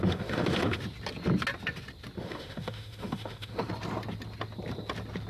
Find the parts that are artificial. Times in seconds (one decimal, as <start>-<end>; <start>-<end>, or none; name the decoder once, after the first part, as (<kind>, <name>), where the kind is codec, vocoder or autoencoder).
0.0-0.8 (autoencoder, DAC-VAE); 2.2-3.7